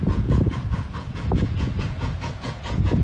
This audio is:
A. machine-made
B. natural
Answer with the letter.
A